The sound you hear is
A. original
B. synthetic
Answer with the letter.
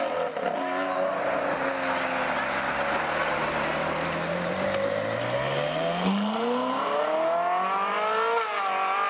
A